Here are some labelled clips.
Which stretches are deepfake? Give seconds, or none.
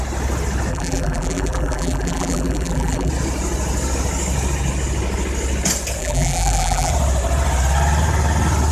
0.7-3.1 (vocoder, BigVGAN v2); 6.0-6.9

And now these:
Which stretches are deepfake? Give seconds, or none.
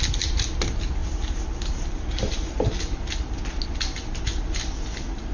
0.0-1.0 (vocoder, BigVGAN v2); 4.2-5.3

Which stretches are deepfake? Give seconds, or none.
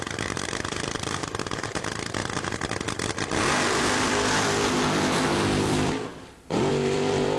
0.0-2.2 (vocoder, BigVGAN v2); 3.8-7.4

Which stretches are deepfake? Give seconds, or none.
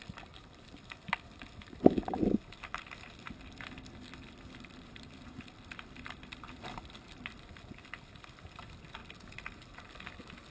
0.0-10.5 (vocoder, BigVGAN v2)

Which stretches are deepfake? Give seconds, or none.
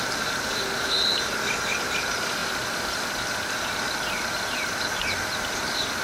0.0-6.0 (vocoder, BigVGAN v2)